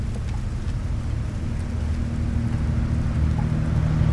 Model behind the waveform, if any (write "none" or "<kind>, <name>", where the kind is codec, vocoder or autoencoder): none